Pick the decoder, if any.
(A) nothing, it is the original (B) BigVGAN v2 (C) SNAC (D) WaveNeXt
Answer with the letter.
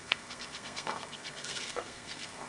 C